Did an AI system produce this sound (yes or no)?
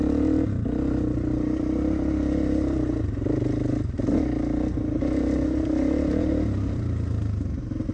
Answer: no